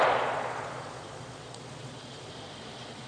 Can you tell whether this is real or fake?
fake